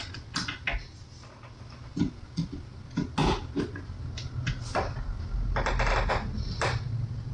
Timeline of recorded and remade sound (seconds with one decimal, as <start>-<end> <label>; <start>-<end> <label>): 0.0-7.3 recorded